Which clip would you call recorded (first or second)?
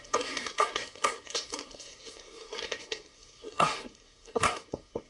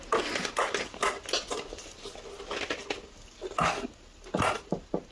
second